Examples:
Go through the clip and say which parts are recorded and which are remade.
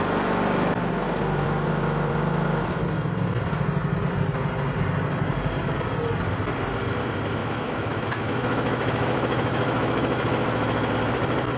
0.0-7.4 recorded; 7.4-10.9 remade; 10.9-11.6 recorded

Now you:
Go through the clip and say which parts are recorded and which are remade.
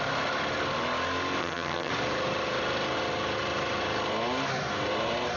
0.0-1.4 recorded; 1.4-1.9 remade; 1.9-5.4 recorded